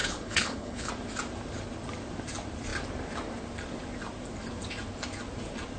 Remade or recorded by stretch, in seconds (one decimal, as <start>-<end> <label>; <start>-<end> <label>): 0.0-0.9 remade; 0.9-5.8 recorded